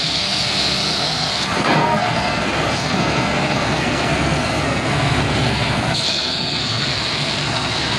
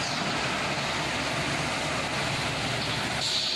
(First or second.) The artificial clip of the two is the first